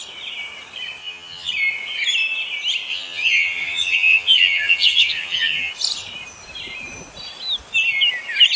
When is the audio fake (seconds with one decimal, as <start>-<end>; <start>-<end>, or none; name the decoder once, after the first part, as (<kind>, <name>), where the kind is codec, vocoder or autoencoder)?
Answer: 1.0-1.5 (vocoder, HiFi-GAN); 2.9-5.7